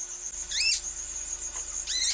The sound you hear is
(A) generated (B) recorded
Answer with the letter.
B